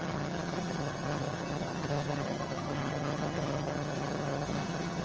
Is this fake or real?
fake